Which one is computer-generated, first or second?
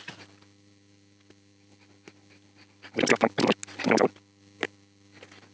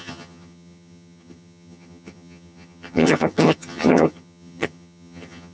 second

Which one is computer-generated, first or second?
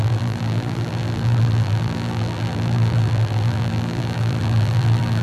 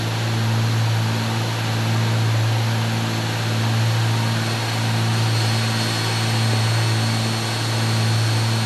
first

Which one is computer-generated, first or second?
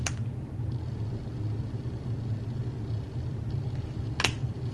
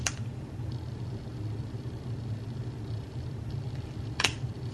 second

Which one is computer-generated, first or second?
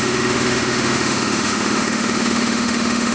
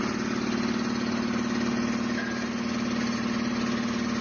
first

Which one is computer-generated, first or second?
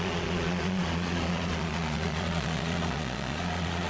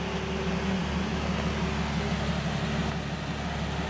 first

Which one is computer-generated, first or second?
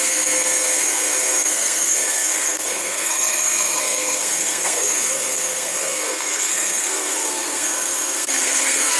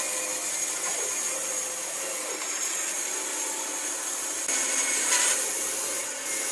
first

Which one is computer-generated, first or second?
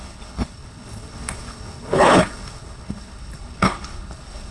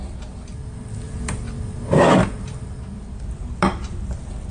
first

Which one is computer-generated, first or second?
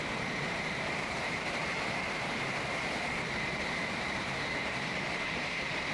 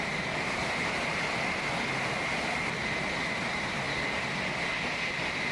first